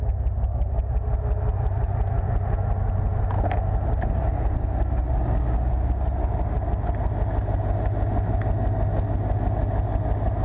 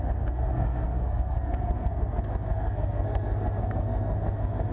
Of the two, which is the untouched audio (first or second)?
first